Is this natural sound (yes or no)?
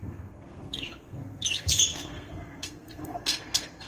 no